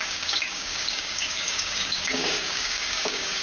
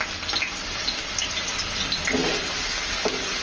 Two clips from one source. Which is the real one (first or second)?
second